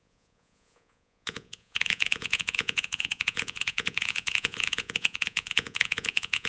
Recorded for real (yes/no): no